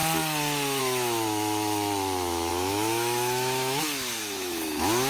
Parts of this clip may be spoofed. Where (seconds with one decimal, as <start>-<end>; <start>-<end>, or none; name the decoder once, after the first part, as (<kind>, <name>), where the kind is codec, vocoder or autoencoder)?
0.8-5.1 (autoencoder, DAC-VAE)